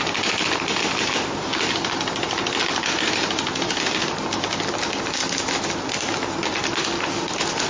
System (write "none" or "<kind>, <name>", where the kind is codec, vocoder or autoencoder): none